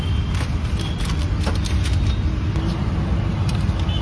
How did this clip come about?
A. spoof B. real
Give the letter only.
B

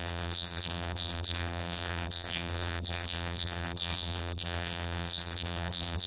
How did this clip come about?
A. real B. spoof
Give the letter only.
B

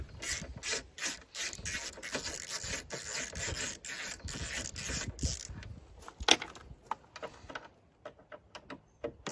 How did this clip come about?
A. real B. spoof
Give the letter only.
A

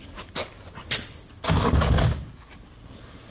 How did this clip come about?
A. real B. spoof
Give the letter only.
A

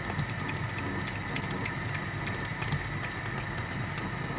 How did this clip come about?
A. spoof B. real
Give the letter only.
B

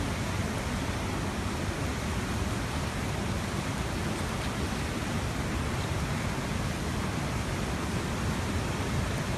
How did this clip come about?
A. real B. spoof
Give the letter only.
B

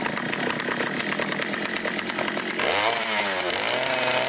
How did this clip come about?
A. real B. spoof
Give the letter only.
A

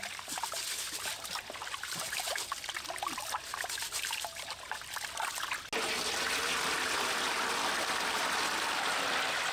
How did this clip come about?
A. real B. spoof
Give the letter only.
A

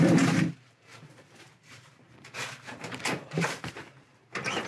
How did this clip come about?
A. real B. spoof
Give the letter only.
B